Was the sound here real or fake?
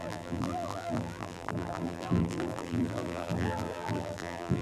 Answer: fake